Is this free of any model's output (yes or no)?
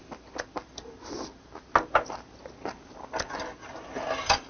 yes